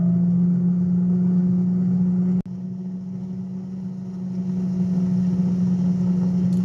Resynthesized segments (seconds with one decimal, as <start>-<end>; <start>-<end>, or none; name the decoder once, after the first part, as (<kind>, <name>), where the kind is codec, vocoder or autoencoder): none

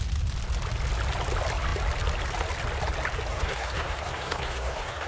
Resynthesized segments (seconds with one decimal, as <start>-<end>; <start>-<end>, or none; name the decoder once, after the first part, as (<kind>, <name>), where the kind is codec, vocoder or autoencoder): 3.3-5.1 (codec, SNAC)

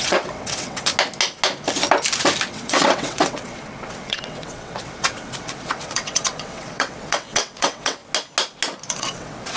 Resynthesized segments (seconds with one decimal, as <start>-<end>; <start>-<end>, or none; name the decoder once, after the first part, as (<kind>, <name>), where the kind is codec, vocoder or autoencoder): 0.0-0.9 (vocoder, WaveNeXt); 2.5-8.0; 8.9-9.6

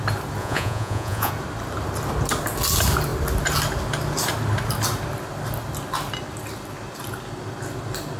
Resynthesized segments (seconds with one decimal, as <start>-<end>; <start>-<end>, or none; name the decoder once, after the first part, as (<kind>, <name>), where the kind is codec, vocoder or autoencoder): 0.4-1.3 (vocoder, Vocos)

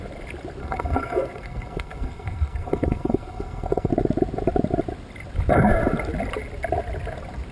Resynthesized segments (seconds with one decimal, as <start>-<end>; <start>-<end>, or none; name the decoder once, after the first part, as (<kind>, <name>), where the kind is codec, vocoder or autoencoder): 0.6-3.9 (codec, SNAC)

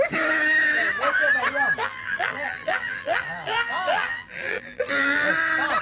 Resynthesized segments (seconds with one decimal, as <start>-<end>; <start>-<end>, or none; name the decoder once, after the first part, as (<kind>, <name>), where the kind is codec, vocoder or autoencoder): 1.8-5.3 (vocoder, BigVGAN v2)

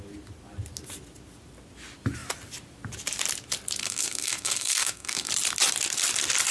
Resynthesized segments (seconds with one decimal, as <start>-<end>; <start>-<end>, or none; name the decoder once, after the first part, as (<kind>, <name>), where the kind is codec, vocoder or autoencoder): 3.8-5.3 (codec, SNAC)

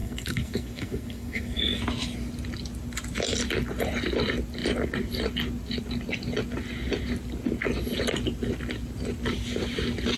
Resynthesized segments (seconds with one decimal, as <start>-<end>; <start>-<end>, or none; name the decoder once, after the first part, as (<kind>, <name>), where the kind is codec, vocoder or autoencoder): 0.0-1.8 (codec, SNAC)